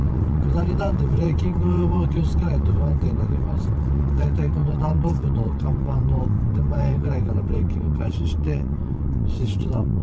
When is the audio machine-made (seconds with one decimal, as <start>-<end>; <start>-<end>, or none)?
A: 0.0-10.0